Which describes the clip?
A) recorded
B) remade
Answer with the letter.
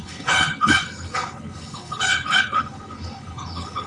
B